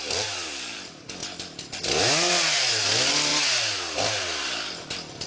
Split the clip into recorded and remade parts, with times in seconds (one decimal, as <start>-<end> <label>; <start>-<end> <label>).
0.0-5.3 recorded